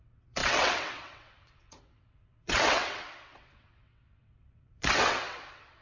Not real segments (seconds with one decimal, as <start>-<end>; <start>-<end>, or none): 0.0-5.8